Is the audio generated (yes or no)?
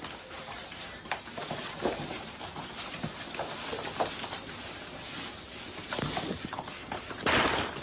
no